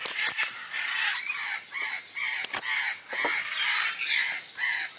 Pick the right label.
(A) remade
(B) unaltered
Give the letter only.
B